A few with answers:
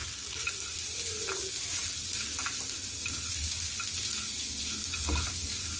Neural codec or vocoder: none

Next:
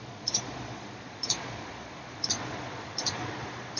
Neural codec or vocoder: vocoder, Vocos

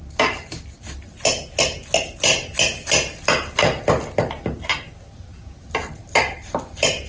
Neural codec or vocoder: none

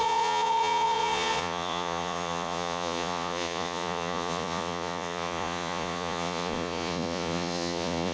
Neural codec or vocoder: vocoder, Vocos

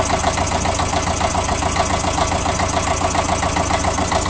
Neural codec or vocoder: none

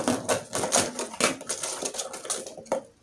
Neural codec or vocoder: none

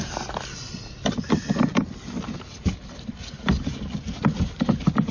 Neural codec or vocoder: none